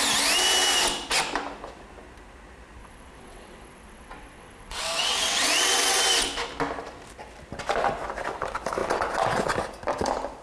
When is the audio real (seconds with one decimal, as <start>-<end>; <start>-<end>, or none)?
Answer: 0.0-2.8; 6.0-10.4